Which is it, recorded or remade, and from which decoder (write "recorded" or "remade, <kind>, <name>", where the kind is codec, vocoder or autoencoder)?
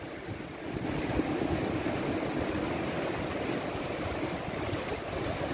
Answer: recorded